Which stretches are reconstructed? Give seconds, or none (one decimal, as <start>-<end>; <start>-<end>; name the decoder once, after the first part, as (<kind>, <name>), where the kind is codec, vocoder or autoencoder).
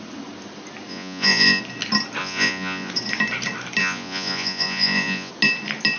0.9-1.6 (vocoder, Vocos); 2.2-2.9; 3.8-5.3